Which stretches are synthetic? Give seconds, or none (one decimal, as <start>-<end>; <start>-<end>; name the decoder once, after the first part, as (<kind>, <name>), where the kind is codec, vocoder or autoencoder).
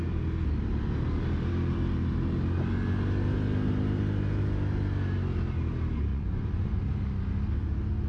6.1-6.8 (vocoder, Vocos)